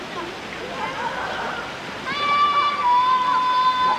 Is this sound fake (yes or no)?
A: no